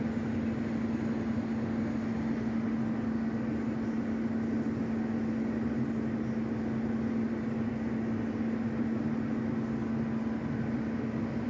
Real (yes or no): yes